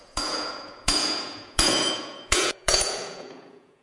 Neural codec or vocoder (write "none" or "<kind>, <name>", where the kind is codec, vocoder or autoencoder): vocoder, Vocos